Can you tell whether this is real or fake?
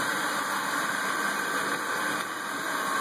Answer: fake